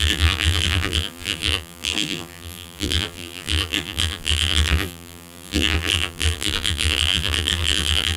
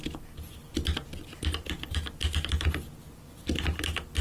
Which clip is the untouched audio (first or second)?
second